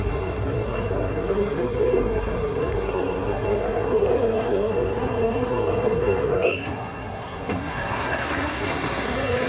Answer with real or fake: fake